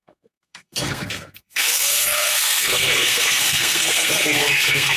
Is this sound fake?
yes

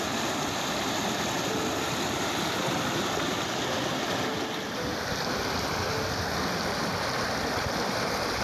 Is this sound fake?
no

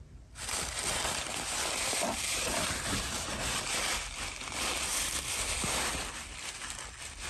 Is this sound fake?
no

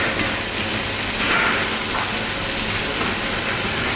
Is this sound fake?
no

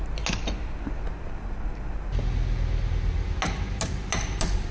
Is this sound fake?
no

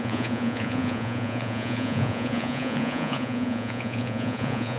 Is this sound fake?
yes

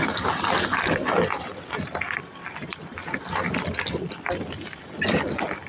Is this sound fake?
no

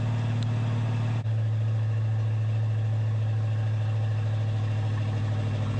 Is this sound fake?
no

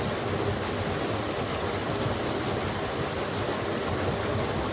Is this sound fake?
no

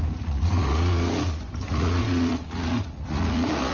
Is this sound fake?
yes